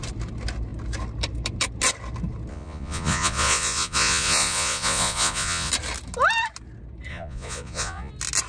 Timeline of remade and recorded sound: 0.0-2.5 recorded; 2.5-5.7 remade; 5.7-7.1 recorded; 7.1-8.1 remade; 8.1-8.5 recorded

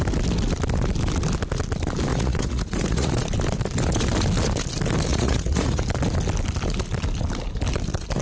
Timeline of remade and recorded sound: 0.0-2.1 recorded; 2.1-3.1 remade; 3.1-5.1 recorded; 5.1-5.8 remade; 5.8-8.2 recorded

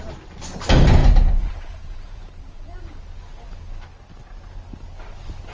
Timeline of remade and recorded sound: 0.0-1.0 recorded; 1.0-3.2 remade; 3.2-5.5 recorded

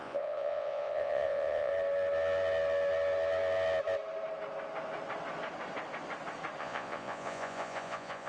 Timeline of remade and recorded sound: 0.0-1.7 remade; 1.7-6.6 recorded; 6.6-8.3 remade

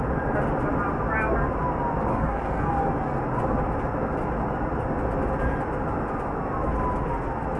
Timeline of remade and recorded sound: 0.0-2.1 recorded; 2.1-2.7 remade; 2.7-7.6 recorded

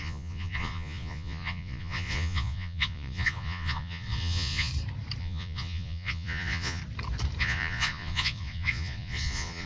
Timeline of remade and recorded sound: 0.0-4.7 remade; 4.7-5.2 recorded; 5.2-6.8 remade; 6.8-7.4 recorded; 7.4-9.7 remade